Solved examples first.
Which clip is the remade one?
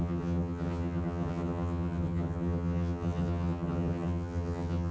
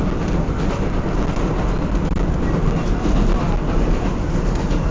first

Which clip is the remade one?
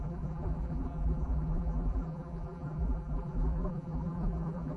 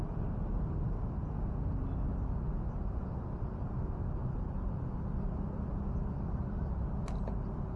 first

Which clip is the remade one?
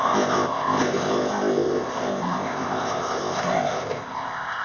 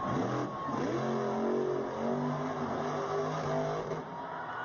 first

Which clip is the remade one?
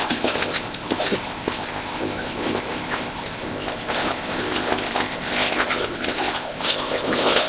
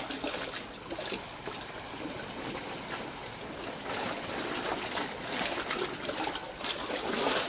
first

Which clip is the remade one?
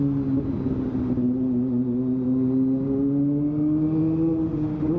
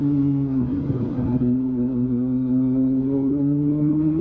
second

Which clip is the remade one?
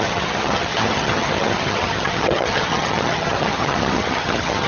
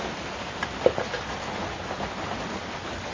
first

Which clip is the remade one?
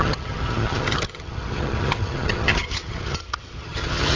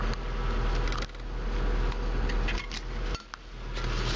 first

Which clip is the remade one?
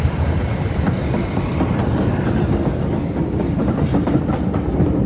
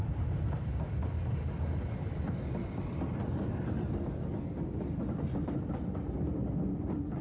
first